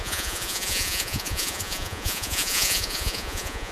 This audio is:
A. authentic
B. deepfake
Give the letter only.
B